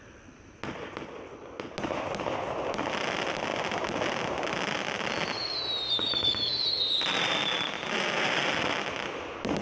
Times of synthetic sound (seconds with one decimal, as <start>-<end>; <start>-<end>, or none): none